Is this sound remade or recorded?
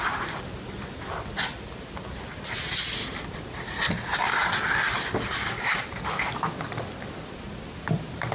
recorded